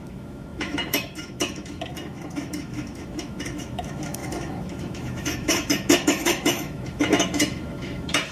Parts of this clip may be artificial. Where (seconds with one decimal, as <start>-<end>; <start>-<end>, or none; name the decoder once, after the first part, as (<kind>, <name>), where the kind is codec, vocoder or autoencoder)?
0.0-8.3 (autoencoder, DAC-VAE)